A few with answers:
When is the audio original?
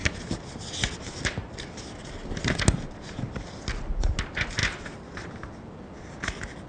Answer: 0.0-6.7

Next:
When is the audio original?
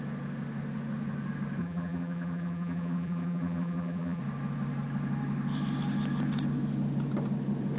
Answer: 0.0-1.6; 4.2-7.8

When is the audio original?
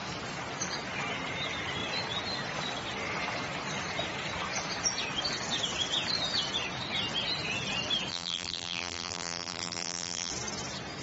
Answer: 0.0-8.1; 10.3-11.0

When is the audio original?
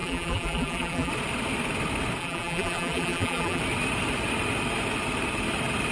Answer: 1.1-2.2; 3.6-5.9